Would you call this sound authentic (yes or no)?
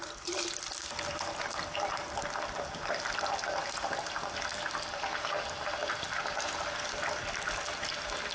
yes